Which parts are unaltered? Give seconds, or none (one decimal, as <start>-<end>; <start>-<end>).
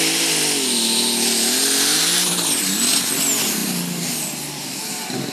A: 0.0-5.3